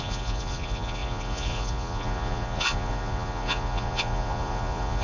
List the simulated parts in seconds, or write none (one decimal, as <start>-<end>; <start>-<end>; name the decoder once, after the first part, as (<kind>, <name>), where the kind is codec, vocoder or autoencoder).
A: 0.0-5.0 (vocoder, Vocos)